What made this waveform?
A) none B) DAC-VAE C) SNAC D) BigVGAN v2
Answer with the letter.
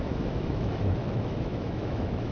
B